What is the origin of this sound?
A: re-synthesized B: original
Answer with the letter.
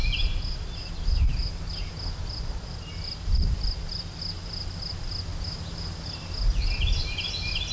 B